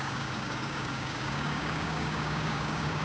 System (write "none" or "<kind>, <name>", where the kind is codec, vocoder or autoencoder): codec, DAC